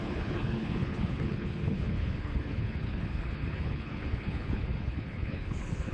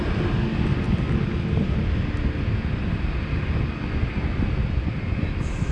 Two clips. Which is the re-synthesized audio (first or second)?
first